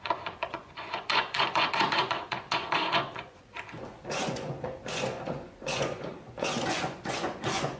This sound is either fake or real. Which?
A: fake